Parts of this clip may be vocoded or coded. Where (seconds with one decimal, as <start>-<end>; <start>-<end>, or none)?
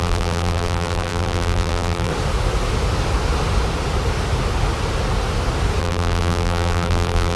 0.0-2.1; 5.8-7.4